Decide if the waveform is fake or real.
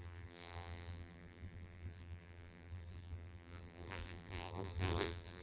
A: fake